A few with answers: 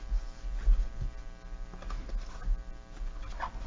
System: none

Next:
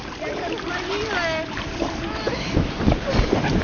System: none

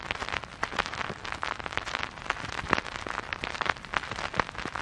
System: vocoder, BigVGAN v2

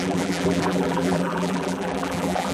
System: vocoder, BigVGAN v2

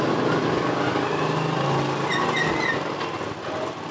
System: none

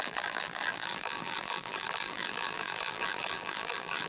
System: vocoder, BigVGAN v2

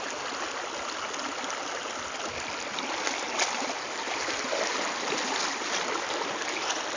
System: none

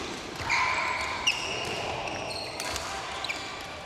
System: vocoder, BigVGAN v2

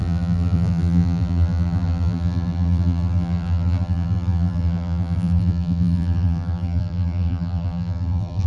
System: vocoder, BigVGAN v2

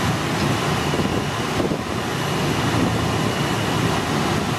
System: none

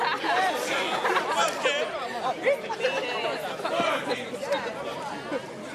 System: none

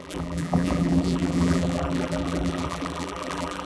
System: vocoder, BigVGAN v2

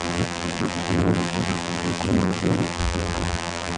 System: vocoder, BigVGAN v2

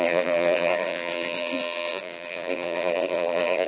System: vocoder, BigVGAN v2